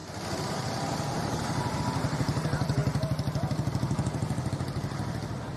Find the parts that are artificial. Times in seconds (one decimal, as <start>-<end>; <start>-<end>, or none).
0.0-2.8; 4.5-5.6

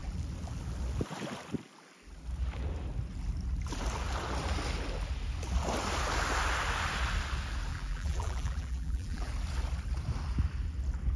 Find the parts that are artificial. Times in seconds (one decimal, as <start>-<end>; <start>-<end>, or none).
7.7-9.3

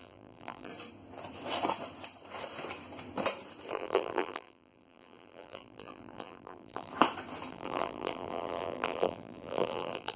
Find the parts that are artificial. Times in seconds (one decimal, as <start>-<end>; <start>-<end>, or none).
0.0-0.7; 3.7-6.9; 7.5-10.2

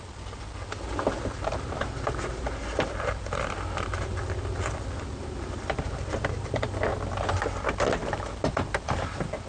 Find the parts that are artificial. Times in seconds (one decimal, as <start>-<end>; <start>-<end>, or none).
0.0-6.9; 8.5-9.5

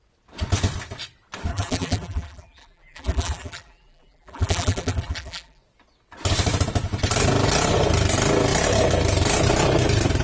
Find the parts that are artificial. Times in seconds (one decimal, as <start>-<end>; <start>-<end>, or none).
1.5-5.6

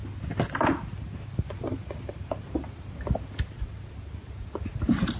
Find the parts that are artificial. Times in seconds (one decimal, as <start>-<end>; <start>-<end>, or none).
none